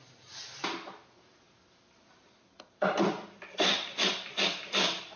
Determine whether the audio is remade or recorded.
recorded